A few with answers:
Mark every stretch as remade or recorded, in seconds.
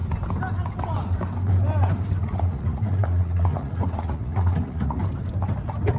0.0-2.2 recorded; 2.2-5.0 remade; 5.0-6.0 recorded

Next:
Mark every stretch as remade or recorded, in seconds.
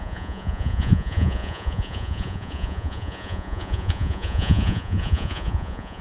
0.0-6.0 remade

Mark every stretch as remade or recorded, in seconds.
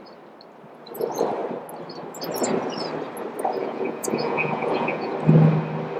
0.0-3.6 recorded; 3.6-5.1 remade; 5.1-6.0 recorded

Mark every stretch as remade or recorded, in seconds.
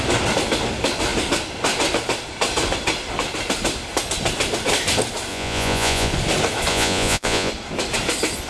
0.0-5.3 recorded; 5.3-6.1 remade; 6.1-6.7 recorded; 6.7-7.5 remade; 7.5-8.5 recorded